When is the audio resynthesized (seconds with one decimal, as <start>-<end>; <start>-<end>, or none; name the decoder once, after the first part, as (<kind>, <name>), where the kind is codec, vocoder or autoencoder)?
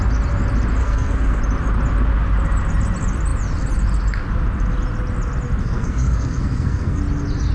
0.8-1.4 (codec, SNAC); 5.6-7.0